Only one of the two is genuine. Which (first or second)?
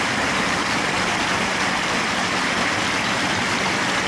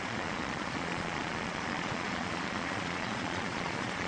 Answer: first